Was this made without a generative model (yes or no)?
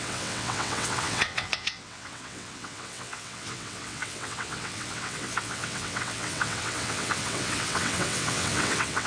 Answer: no